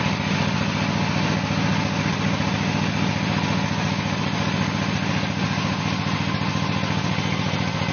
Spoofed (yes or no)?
no